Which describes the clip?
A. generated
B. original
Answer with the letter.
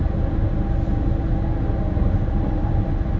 B